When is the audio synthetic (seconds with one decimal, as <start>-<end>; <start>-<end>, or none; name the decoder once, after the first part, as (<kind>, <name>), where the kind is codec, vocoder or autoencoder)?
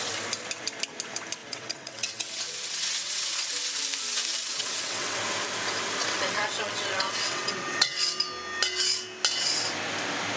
1.4-3.8 (vocoder, WaveNeXt); 4.4-5.2; 6.0-8.0